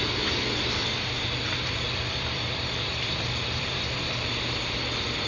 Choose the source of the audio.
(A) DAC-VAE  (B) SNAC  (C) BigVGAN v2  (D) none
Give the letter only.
C